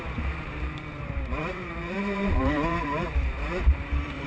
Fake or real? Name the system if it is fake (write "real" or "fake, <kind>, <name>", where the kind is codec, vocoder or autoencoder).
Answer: fake, vocoder, BigVGAN v2